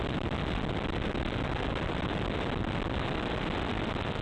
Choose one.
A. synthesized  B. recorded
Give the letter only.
B